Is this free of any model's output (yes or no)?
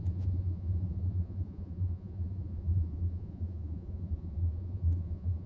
no